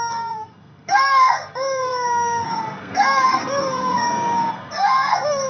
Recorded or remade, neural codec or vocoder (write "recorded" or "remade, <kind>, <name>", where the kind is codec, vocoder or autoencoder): remade, codec, SNAC